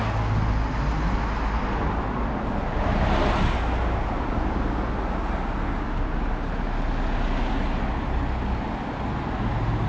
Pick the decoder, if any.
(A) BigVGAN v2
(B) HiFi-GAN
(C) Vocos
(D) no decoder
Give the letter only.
D